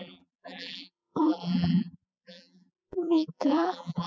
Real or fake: fake